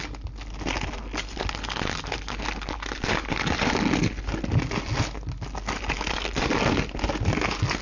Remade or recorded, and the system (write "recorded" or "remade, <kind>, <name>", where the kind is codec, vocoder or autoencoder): recorded